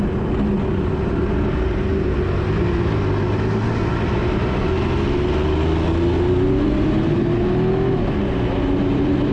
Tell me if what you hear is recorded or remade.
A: recorded